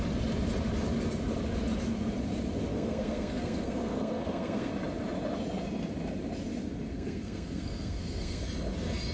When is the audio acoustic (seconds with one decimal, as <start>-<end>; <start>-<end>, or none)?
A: 0.0-2.7; 4.7-6.9; 8.4-9.1